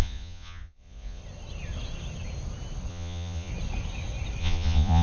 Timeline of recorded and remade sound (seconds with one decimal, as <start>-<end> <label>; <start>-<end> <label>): 0.0-1.2 remade; 1.2-2.9 recorded; 2.9-3.5 remade; 3.5-4.4 recorded; 4.4-5.0 remade